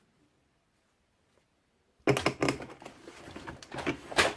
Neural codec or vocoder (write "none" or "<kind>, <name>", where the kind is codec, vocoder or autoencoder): none